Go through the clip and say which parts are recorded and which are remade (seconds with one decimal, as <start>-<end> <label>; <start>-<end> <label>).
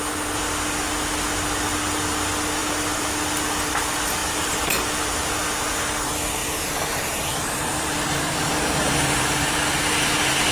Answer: 0.0-6.4 recorded; 6.4-9.5 remade; 9.5-10.5 recorded